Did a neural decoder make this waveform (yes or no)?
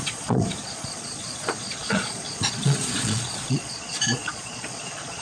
yes